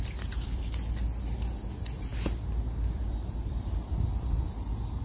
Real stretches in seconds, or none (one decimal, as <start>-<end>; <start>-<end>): 0.0-5.0